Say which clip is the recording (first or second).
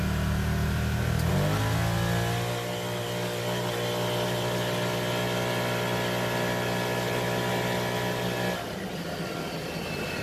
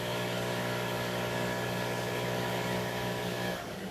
first